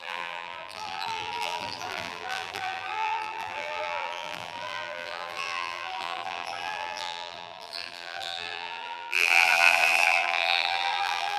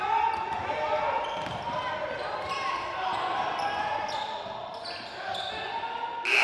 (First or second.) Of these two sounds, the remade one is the first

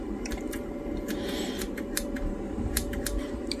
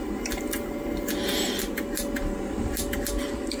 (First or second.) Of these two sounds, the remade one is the first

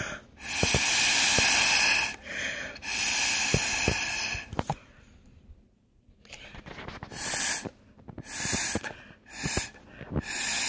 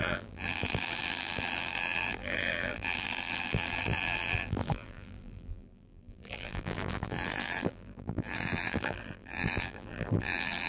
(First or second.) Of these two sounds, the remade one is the second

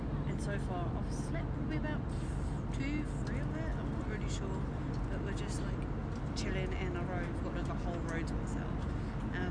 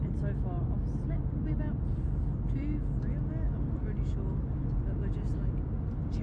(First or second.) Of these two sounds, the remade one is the second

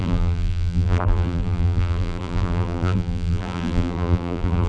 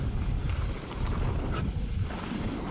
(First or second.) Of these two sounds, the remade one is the first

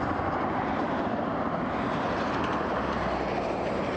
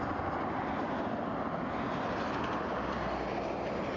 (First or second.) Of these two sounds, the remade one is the first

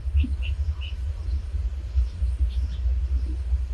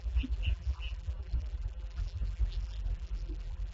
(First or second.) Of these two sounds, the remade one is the second